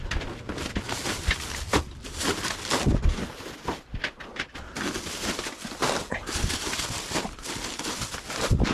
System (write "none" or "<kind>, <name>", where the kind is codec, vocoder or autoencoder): none